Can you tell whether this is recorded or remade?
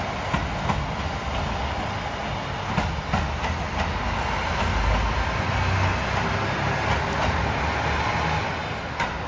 recorded